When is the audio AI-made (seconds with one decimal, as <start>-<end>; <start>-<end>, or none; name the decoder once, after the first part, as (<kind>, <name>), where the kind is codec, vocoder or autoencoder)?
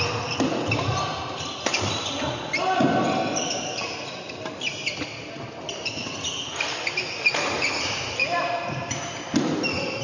7.3-10.0 (vocoder, BigVGAN v2)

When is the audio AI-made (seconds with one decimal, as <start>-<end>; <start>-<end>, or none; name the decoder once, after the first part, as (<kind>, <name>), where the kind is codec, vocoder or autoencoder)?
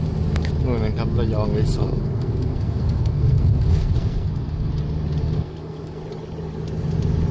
1.8-4.7 (codec, SNAC); 5.2-6.0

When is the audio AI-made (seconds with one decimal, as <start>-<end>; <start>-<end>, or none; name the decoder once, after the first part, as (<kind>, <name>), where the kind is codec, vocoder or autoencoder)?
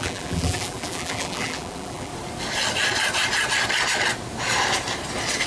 0.0-2.1 (vocoder, BigVGAN v2)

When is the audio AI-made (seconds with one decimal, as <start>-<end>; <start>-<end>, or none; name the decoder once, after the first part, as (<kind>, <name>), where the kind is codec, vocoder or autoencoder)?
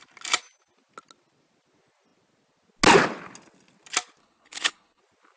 4.2-5.0 (codec, HILCodec)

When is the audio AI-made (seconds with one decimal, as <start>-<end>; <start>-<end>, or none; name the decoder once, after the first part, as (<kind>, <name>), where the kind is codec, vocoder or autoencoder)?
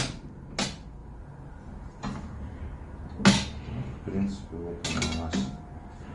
none